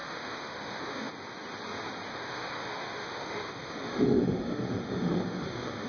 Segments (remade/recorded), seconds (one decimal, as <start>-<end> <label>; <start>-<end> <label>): 0.0-1.1 remade; 1.1-2.1 recorded; 2.1-5.9 remade